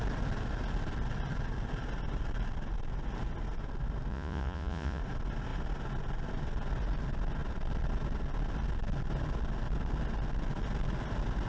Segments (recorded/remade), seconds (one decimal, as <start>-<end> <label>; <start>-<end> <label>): 0.0-4.1 recorded; 4.1-5.0 remade; 5.0-11.5 recorded